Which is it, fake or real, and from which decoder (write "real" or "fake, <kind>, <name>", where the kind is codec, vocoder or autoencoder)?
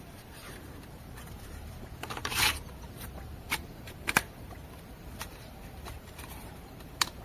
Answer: fake, vocoder, BigVGAN v2